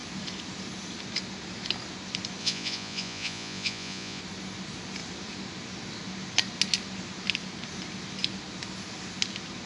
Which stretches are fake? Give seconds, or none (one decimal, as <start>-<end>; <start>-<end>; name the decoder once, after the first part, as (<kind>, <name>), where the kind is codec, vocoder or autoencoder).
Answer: 2.4-4.2 (vocoder, Vocos)